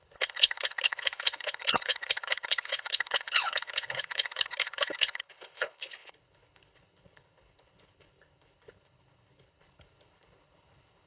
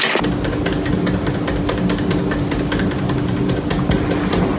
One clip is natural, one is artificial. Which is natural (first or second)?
second